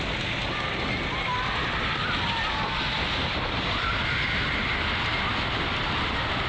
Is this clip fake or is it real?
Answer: real